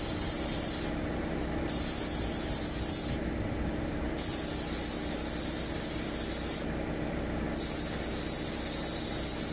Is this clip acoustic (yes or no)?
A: yes